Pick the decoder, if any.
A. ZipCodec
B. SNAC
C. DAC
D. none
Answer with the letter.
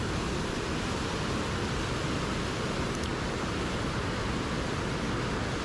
D